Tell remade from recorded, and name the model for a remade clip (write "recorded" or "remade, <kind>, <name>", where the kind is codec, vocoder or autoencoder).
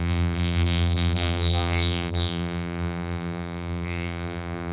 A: remade, vocoder, BigVGAN v2